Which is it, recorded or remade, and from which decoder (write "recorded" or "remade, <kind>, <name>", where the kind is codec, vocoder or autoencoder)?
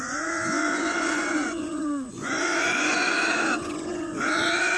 remade, vocoder, Vocos